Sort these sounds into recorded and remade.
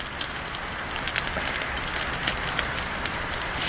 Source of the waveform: recorded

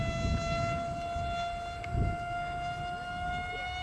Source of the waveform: recorded